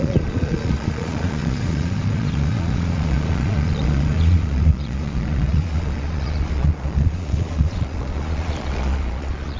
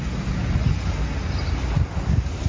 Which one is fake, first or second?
first